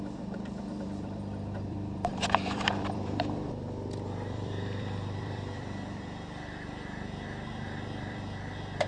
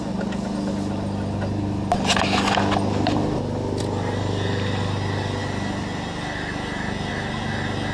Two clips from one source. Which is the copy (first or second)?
first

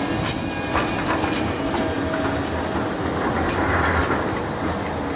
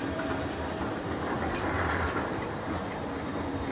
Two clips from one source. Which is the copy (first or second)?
second